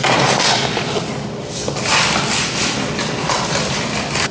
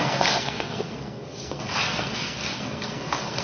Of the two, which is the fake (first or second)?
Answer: second